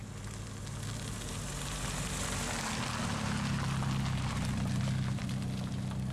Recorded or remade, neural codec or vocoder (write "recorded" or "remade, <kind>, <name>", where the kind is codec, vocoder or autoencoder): recorded